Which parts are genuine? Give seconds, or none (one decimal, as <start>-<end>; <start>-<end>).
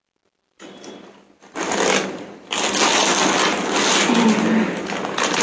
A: 0.0-5.4